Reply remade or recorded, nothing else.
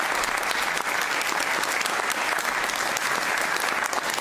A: recorded